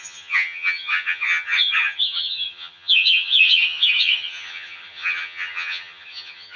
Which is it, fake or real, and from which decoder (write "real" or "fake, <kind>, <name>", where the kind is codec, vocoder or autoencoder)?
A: fake, vocoder, HiFi-GAN